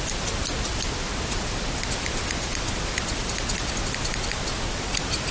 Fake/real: real